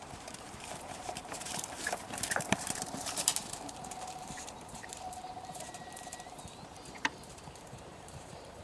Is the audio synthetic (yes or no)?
yes